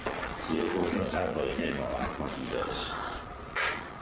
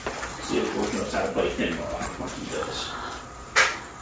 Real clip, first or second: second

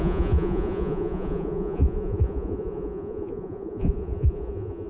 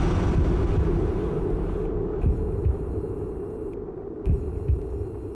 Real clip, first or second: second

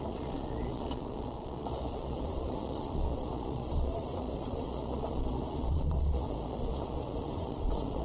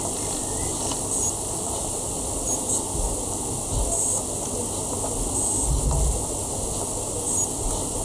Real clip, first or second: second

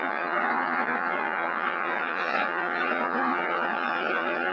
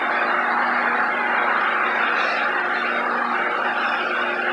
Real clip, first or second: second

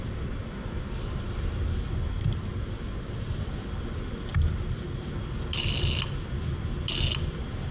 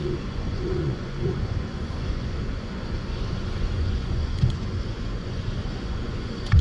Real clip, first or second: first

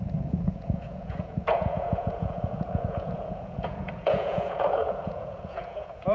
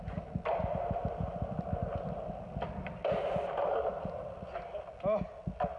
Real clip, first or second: second